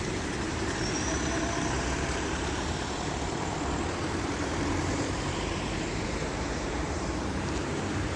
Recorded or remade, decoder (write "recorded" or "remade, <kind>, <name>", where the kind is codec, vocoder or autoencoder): remade, vocoder, BigVGAN v2